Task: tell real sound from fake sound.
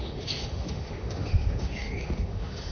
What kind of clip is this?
fake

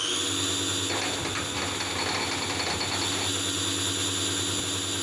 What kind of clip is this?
real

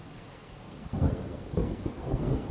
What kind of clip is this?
fake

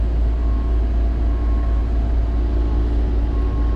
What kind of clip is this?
real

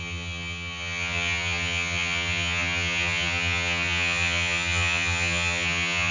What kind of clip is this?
fake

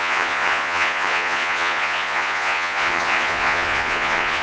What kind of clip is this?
fake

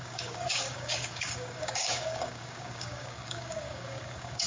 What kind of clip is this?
fake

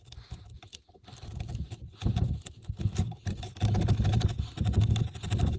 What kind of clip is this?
real